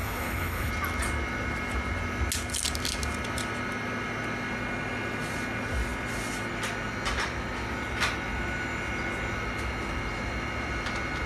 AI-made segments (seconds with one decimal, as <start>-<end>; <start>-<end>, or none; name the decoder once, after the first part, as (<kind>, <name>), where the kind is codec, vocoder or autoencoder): 0.0-0.7 (codec, HILCodec)